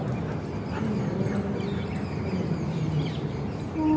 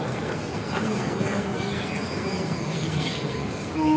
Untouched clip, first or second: first